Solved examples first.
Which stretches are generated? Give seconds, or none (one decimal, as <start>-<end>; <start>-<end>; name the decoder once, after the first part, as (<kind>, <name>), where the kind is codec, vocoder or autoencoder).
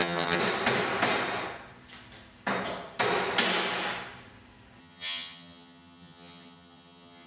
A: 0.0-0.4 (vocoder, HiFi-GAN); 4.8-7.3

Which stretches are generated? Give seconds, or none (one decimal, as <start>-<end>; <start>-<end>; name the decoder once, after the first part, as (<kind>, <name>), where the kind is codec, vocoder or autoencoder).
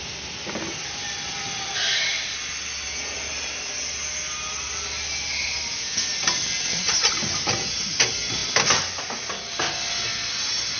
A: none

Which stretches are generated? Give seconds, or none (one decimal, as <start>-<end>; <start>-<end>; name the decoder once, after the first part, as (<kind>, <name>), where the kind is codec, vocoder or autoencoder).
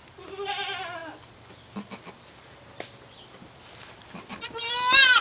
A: none